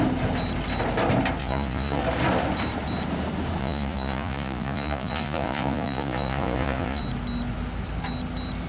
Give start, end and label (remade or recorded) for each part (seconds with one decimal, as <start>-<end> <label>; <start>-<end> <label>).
0.0-1.4 recorded; 1.4-2.0 remade; 2.0-3.6 recorded; 3.6-7.0 remade; 7.0-8.7 recorded